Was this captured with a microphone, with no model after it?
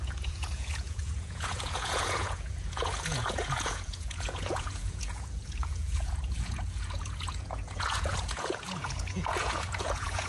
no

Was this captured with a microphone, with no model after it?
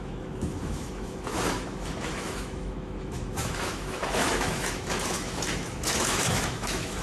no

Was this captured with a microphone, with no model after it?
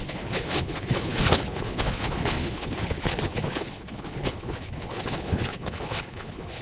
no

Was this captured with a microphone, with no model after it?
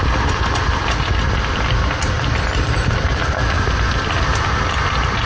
yes